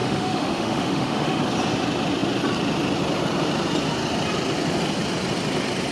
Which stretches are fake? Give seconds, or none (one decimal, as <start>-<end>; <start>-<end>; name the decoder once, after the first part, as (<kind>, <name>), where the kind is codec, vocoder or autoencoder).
0.0-1.4 (autoencoder, DAC-VAE)